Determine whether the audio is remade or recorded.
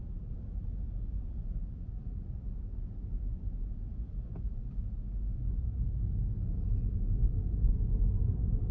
recorded